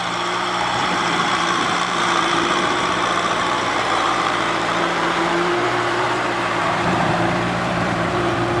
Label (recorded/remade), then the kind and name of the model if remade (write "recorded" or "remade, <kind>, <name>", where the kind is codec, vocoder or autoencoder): remade, vocoder, BigVGAN v2